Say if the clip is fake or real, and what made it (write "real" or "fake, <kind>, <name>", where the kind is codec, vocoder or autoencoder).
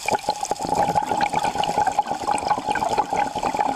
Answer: real